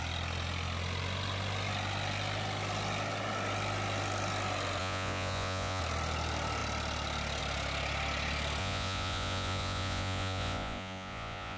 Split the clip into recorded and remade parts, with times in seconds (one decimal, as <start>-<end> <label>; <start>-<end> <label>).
0.0-4.8 recorded; 4.8-5.8 remade; 5.8-8.6 recorded; 8.6-11.6 remade